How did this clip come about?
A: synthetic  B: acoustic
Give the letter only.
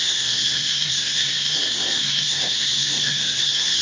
A